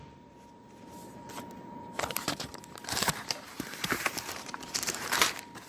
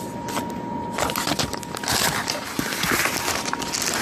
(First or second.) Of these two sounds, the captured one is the second